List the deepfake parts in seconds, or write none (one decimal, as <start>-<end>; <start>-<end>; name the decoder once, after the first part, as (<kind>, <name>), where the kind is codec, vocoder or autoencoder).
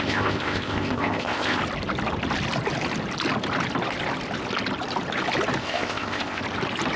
0.0-1.6 (codec, ZipCodec); 5.6-6.4